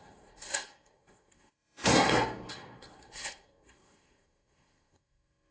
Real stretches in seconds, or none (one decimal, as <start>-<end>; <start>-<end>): none